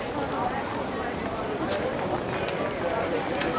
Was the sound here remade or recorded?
remade